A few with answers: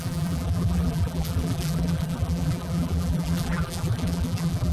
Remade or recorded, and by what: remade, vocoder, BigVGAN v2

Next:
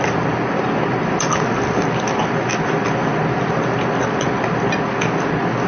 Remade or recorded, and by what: recorded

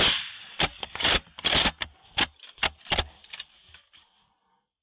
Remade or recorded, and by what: recorded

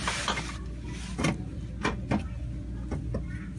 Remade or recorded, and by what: recorded